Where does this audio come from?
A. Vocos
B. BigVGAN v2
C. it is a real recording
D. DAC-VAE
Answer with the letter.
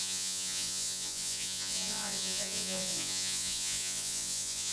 A